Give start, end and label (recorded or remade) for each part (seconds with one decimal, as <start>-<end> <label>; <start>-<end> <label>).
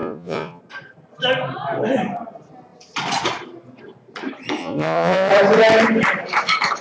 0.0-0.6 remade; 0.6-4.6 recorded; 4.6-5.3 remade; 5.3-6.8 recorded